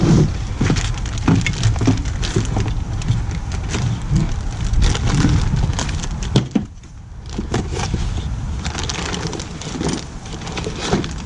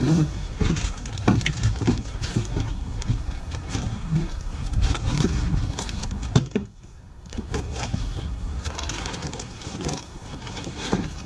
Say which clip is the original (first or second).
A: first